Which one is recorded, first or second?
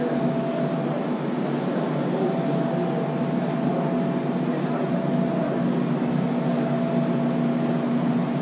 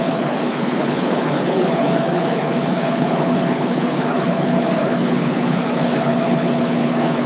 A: first